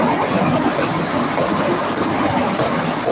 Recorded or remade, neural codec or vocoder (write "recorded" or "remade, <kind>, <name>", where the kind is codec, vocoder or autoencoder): recorded